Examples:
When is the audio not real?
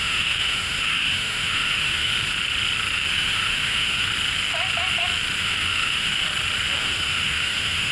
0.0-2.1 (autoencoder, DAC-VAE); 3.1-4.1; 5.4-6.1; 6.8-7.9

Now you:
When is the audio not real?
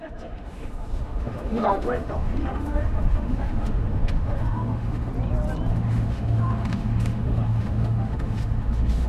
0.0-5.1 (autoencoder, DAC-VAE); 5.7-9.1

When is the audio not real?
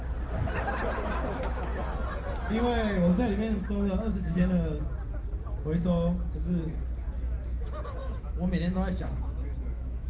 3.1-4.8 (autoencoder, DAC-VAE); 8.0-10.1